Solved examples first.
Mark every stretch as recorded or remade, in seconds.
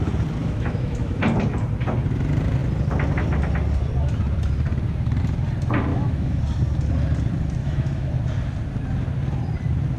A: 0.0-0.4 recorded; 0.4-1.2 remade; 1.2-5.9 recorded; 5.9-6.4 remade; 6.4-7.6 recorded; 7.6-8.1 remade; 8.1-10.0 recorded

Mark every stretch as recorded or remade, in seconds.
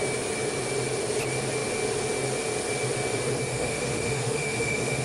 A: 0.0-3.5 recorded; 3.5-5.0 remade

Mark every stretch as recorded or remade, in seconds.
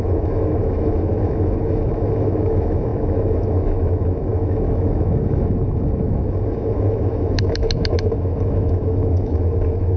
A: 0.0-10.0 remade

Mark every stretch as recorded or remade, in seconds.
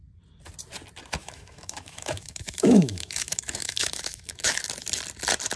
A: 0.0-1.2 recorded; 1.2-4.6 remade; 4.6-5.6 recorded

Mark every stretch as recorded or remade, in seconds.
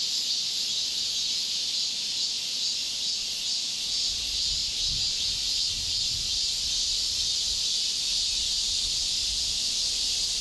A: 0.0-10.4 recorded